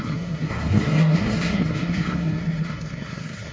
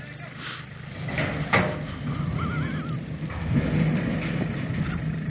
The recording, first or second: second